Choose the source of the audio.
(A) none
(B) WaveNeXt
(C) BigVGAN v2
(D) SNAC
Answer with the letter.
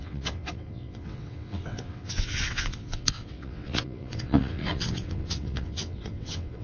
B